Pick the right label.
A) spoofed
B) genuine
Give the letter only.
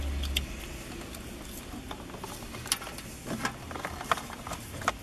B